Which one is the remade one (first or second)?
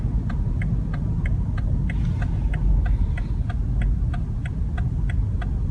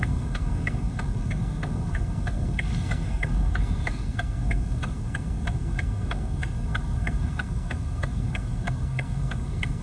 second